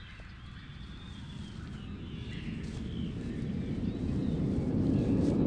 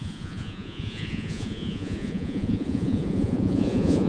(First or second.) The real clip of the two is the first